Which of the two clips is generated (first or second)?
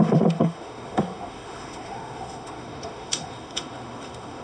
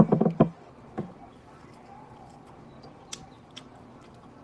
first